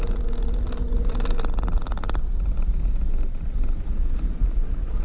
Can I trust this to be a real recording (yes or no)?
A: yes